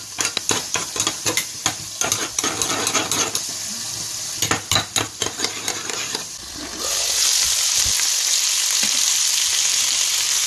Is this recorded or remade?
recorded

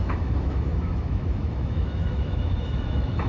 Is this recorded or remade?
remade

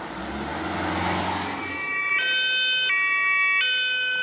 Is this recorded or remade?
recorded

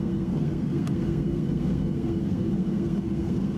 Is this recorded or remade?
remade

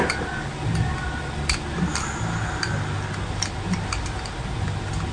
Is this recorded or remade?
recorded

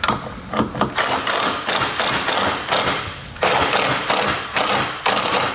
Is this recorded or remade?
recorded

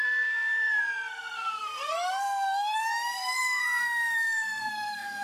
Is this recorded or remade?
remade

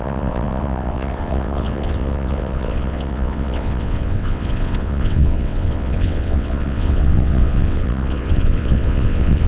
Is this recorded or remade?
remade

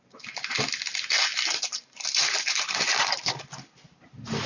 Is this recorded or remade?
recorded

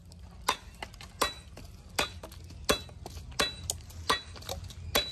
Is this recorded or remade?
recorded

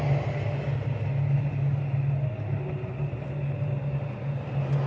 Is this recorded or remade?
recorded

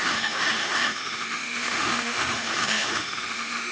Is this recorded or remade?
remade